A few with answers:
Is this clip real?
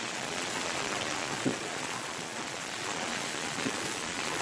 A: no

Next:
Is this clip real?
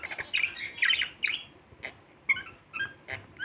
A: yes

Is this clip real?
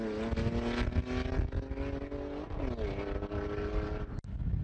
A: yes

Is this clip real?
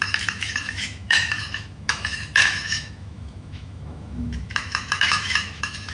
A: no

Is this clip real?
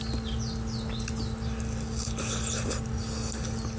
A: yes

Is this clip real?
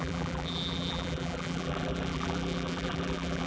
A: no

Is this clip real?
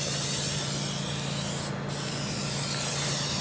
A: yes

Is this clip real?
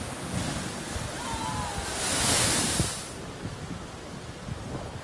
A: yes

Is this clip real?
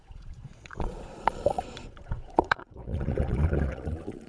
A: no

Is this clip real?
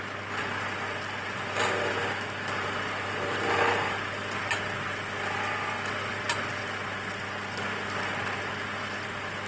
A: yes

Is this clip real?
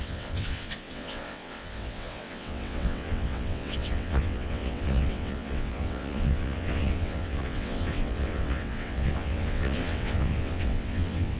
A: no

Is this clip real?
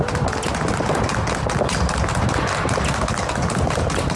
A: yes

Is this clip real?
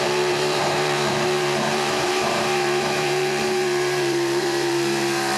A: no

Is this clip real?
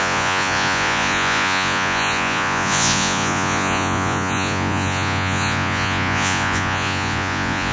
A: no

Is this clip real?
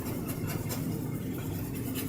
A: yes